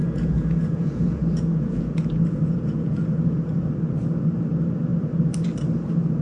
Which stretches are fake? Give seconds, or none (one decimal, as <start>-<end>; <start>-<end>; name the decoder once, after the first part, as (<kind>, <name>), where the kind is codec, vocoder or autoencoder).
0.0-3.7 (vocoder, Vocos)

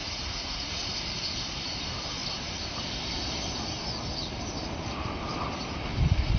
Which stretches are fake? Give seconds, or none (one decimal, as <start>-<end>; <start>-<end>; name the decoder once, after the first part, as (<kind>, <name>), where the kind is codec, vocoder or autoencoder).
0.0-0.9 (vocoder, Vocos)

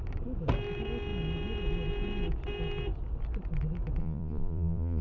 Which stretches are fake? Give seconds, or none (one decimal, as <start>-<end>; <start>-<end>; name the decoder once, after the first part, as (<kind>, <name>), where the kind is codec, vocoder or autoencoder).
4.0-5.0 (vocoder, Vocos)

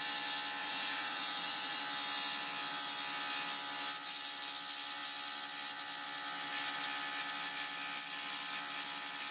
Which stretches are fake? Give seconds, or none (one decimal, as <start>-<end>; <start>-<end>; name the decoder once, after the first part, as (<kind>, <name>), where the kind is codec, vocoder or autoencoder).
0.6-1.8 (vocoder, Vocos)

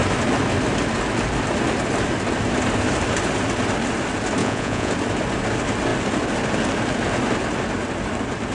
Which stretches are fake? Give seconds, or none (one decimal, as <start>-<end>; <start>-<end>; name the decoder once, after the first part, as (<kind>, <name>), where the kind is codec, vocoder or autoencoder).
4.4-4.9 (vocoder, Vocos)

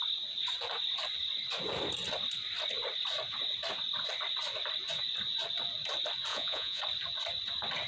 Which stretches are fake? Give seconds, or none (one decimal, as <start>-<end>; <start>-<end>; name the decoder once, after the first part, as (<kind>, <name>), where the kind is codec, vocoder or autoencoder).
6.3-6.8 (vocoder, Vocos)

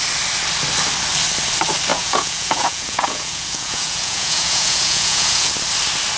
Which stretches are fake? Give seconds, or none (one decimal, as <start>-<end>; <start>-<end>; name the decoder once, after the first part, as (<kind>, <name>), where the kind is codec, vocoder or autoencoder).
1.9-5.5 (vocoder, Vocos)

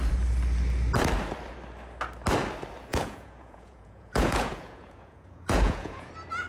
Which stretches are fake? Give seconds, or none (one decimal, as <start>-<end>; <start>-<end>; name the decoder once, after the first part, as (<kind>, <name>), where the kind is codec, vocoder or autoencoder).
2.9-6.1 (vocoder, Vocos)